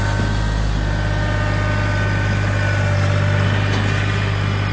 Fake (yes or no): no